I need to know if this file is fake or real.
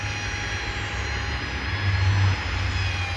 real